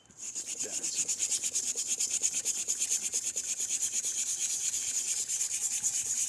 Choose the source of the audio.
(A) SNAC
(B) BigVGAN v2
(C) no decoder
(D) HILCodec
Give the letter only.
B